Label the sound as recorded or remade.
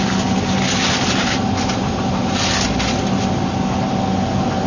recorded